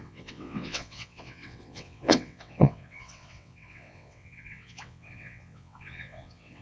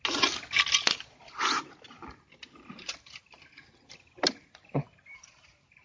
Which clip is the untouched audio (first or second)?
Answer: second